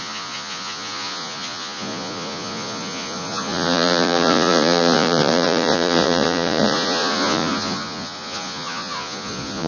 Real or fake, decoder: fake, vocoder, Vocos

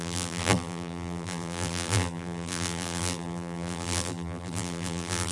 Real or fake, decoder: fake, vocoder, BigVGAN v2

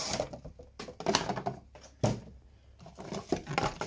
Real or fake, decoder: real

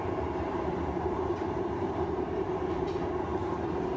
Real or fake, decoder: fake, vocoder, BigVGAN v2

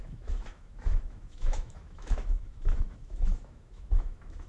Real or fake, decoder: fake, autoencoder, DAC-VAE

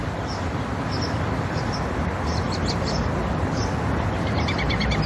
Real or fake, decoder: real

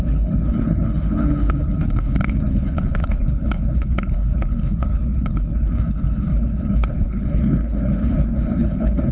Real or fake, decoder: fake, codec, HILCodec